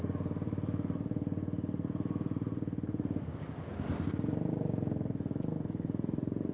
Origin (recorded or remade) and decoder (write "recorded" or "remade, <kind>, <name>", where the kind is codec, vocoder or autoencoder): recorded